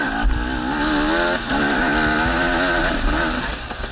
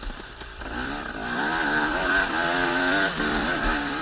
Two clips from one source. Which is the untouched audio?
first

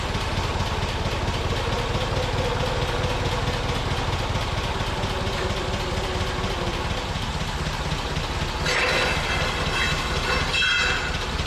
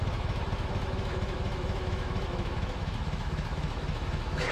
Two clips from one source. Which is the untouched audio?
first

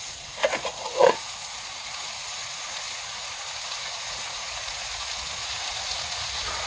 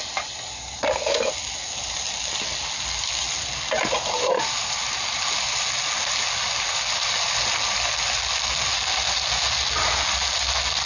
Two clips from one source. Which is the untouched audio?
second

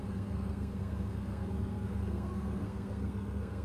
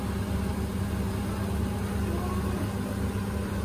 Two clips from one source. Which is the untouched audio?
second